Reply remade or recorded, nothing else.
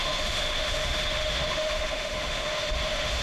remade